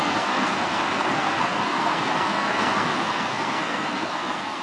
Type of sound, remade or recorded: remade